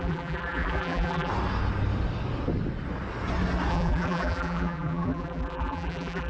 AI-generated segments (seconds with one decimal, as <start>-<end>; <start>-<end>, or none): 0.0-1.3; 3.7-6.3